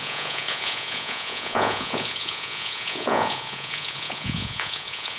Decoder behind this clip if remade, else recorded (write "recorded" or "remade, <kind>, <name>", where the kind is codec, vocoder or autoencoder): remade, vocoder, Vocos